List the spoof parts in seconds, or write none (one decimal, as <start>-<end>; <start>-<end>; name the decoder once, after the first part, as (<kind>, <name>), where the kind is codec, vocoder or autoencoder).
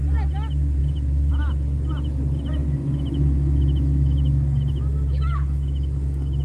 0.8-1.3 (autoencoder, DAC-VAE); 2.6-6.4